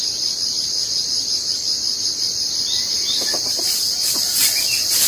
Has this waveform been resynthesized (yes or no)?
no